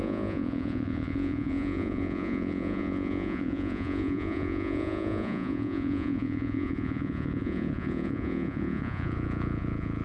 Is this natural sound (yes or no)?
no